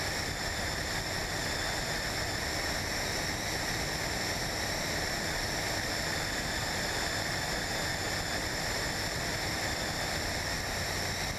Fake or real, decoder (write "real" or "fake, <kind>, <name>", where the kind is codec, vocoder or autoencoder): real